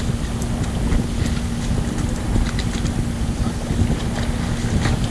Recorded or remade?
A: recorded